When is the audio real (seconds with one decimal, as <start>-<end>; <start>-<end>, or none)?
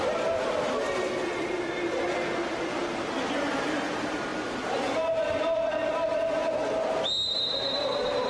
none